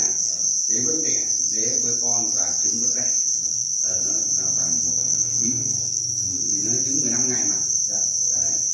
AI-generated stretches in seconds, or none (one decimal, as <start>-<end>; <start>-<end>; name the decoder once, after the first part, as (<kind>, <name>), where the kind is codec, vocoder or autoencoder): 0.0-0.4 (codec, SNAC); 3.1-3.7; 4.9-6.5